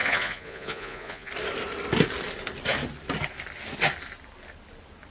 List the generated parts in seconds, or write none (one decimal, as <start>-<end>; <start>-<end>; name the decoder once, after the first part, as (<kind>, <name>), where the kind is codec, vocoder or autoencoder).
0.0-1.3 (vocoder, Vocos)